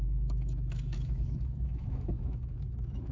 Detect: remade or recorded remade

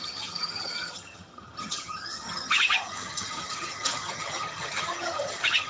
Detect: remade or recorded remade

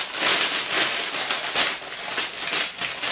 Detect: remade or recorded recorded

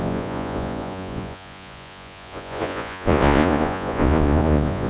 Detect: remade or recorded remade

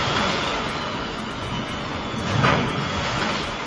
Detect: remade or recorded remade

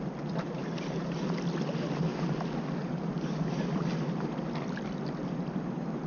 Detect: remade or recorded recorded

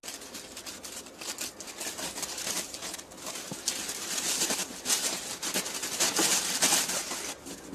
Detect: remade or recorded recorded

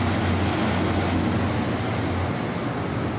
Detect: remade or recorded recorded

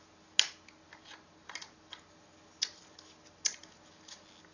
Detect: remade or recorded recorded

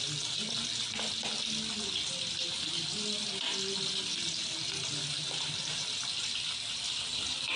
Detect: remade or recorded recorded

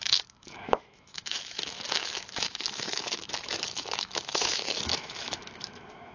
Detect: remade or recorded remade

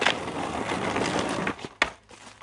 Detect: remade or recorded recorded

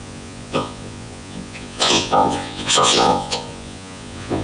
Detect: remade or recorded remade